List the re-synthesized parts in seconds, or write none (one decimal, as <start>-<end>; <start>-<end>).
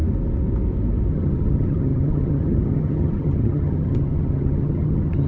1.1-5.3